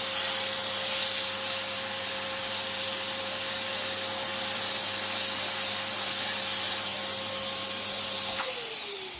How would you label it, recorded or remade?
recorded